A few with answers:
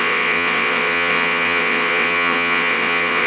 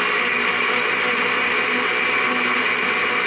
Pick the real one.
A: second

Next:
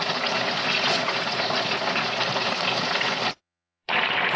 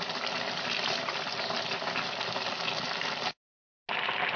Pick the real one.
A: second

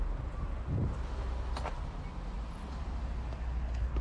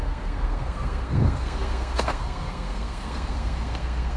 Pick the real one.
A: first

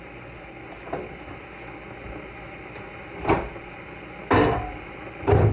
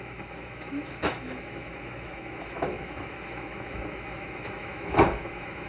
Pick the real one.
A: first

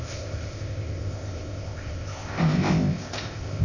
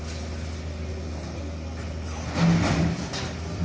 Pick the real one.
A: second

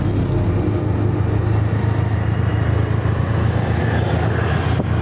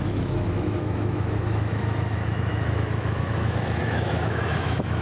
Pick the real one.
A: first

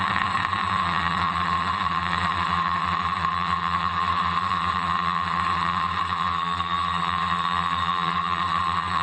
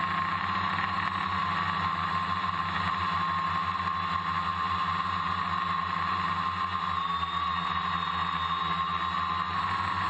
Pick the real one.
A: second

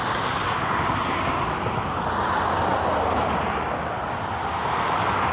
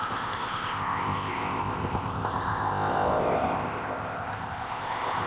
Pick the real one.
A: first